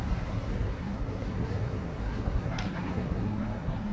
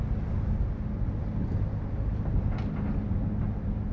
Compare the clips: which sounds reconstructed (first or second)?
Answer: first